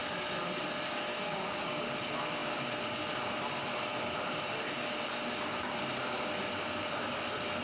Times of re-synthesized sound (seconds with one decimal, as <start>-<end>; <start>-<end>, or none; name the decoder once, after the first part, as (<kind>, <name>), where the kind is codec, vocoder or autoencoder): 1.1-1.8 (codec, DAC)